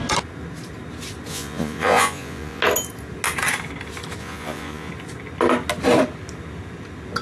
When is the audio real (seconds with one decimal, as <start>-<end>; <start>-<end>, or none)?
0.0-1.3; 2.6-4.2; 4.9-7.2